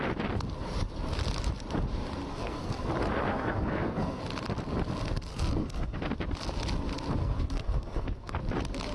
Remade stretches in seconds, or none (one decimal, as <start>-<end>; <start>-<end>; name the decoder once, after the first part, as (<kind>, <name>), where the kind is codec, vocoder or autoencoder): 2.3-2.9 (codec, SNAC); 3.3-4.2; 5.3-6.0; 7.2-8.4